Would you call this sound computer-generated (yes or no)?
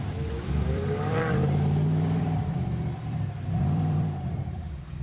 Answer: yes